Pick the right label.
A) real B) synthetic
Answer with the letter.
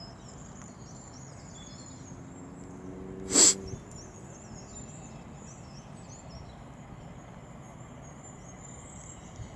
A